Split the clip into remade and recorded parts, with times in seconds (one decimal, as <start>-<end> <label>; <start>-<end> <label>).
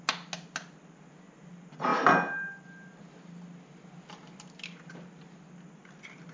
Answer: 0.0-6.3 recorded